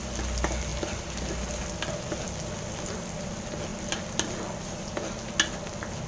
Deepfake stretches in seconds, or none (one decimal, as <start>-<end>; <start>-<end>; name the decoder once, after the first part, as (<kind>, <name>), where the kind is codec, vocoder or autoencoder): 3.7-5.0 (vocoder, BigVGAN v2)